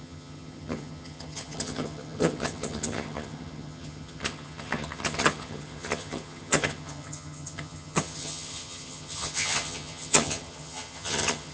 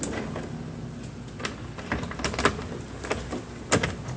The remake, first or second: first